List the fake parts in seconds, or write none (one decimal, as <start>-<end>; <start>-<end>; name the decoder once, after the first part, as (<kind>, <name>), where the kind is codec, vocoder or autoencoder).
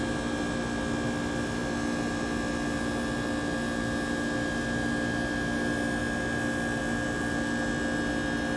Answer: none